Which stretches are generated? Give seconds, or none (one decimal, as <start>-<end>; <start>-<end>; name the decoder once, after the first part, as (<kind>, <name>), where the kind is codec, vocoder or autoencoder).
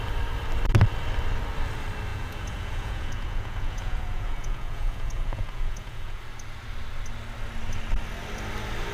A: 2.1-6.2 (vocoder, Vocos)